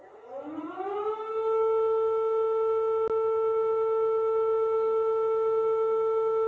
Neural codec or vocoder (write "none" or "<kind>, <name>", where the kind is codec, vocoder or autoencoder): none